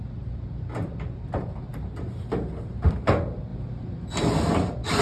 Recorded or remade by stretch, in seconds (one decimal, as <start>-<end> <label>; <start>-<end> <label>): 0.0-5.0 recorded